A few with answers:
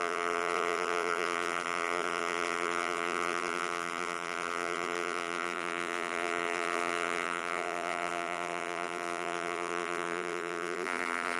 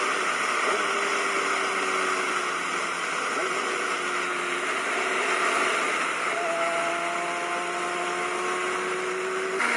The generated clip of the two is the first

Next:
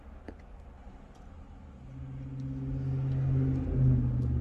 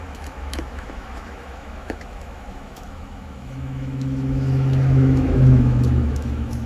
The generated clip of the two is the second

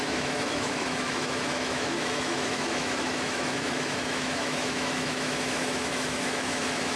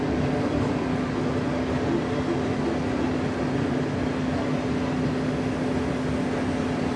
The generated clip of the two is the first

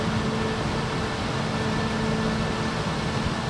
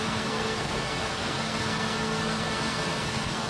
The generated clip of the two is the second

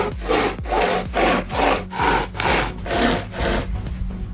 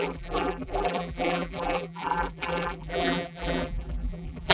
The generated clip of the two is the second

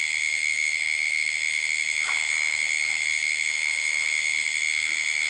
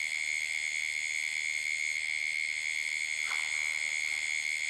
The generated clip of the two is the first